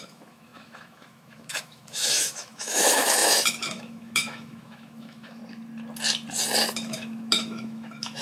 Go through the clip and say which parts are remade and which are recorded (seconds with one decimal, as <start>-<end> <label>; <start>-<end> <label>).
0.0-5.4 remade; 5.4-6.7 recorded; 6.7-8.2 remade